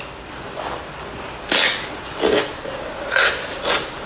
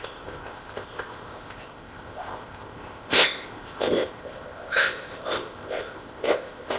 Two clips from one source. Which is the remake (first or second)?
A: second